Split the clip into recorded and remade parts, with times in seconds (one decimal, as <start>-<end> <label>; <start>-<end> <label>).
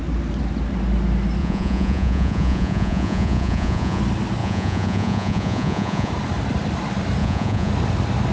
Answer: 0.0-1.4 recorded; 1.4-4.0 remade; 4.0-4.4 recorded; 4.4-6.1 remade; 6.1-7.2 recorded; 7.2-7.7 remade; 7.7-8.3 recorded